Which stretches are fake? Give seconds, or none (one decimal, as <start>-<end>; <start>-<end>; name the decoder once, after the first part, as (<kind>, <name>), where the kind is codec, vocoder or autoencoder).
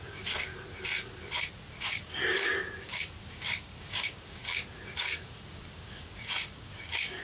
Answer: 0.0-0.5 (codec, DAC); 1.8-2.2; 2.8-4.4; 5.0-7.2